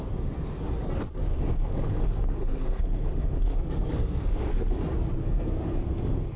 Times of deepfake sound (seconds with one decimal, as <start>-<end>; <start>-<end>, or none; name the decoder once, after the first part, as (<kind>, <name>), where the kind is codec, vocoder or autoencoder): 1.3-4.8 (codec, SNAC); 5.2-6.4